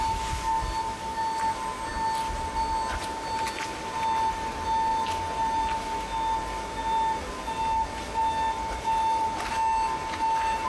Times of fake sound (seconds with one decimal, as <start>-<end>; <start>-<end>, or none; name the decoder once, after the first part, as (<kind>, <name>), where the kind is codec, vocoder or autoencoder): none